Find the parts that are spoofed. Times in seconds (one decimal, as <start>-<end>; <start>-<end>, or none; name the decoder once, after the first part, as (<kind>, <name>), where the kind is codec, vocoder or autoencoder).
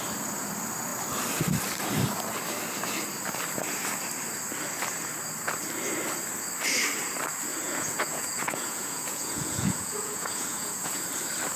7.5-11.0 (vocoder, Vocos)